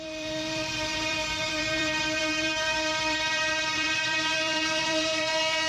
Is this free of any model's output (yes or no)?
no